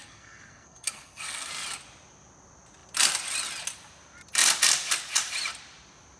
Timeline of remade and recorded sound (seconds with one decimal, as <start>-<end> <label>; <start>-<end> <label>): 0.0-1.5 remade; 1.5-6.2 recorded